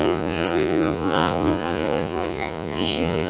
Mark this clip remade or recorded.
remade